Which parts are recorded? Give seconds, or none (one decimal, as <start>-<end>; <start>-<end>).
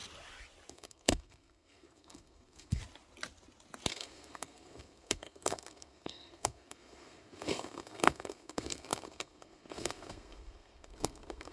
0.0-0.7; 2.8-3.9